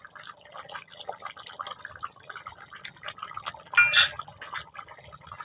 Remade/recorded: recorded